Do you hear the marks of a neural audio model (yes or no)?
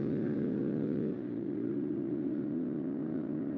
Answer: yes